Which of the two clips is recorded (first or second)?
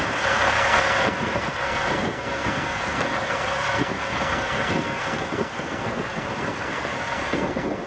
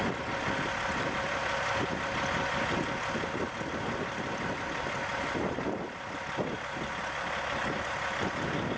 second